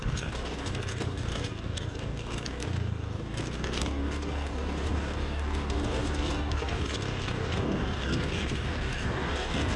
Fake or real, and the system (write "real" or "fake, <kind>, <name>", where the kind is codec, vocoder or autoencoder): fake, codec, DAC